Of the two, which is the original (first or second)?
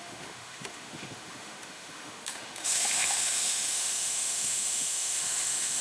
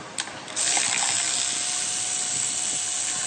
second